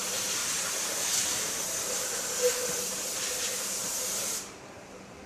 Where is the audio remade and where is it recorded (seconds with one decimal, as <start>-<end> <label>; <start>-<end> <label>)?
0.0-5.3 remade